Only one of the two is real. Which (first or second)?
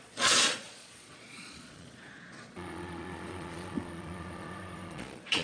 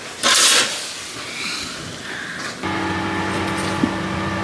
second